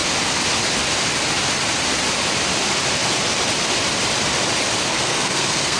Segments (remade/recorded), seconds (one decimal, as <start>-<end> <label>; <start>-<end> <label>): 0.0-4.9 recorded; 4.9-5.8 remade